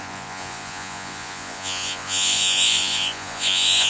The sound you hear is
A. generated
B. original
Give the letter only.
A